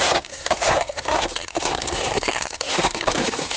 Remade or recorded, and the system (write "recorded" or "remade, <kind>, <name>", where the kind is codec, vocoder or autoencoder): remade, codec, SNAC